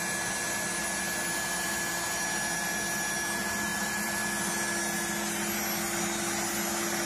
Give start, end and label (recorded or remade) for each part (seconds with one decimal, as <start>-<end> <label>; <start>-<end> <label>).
0.0-3.7 recorded; 3.7-4.2 remade; 4.2-7.1 recorded